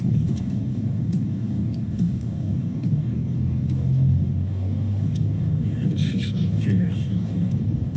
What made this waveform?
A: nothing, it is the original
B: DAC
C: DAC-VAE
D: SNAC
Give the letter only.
B